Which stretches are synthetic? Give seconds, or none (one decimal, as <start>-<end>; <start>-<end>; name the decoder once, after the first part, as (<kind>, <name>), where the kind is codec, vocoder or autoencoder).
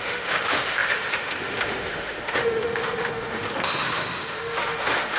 0.0-5.2 (autoencoder, DAC-VAE)